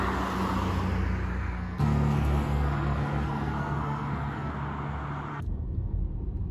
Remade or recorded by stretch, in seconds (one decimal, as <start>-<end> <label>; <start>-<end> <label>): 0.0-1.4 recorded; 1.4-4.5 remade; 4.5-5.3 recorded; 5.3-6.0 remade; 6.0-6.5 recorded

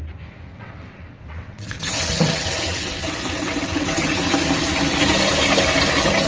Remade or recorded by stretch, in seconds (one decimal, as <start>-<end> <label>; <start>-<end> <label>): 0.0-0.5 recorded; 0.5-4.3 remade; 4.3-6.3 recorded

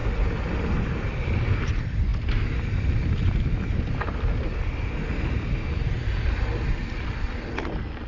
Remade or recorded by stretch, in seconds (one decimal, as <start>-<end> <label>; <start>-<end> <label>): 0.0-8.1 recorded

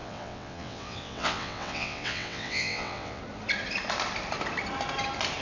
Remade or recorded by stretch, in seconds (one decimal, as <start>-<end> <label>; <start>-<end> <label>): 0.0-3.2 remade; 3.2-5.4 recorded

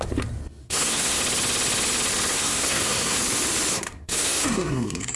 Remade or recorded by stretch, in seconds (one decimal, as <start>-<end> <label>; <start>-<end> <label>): 0.0-0.6 recorded; 0.6-1.2 remade; 1.2-2.3 recorded; 2.3-3.2 remade; 3.2-3.7 recorded; 3.7-5.2 remade

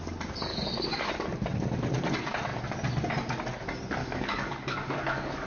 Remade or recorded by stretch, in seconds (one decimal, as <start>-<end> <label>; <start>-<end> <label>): 0.0-0.5 recorded; 0.5-1.1 remade; 1.1-4.0 recorded; 4.0-5.5 remade

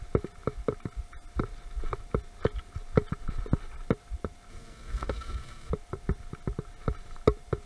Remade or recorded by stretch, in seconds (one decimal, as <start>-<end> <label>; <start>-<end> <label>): 0.0-4.5 recorded; 4.5-5.7 remade; 5.7-7.7 recorded